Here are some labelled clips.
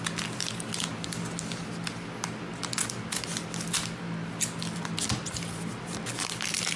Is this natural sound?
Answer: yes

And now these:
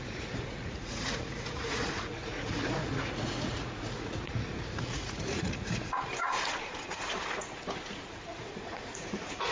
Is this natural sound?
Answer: no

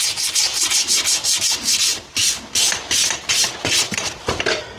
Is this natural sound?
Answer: yes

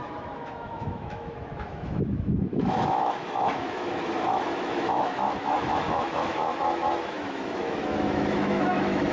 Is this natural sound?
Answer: no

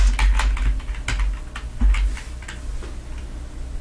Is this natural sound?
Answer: yes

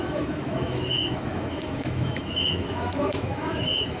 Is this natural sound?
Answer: no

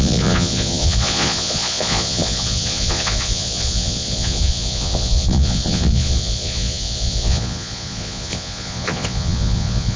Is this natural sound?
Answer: no